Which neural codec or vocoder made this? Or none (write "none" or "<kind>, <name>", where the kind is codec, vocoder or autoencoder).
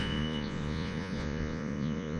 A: vocoder, Vocos